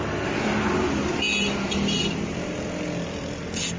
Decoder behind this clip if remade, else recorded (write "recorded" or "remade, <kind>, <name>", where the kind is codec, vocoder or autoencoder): recorded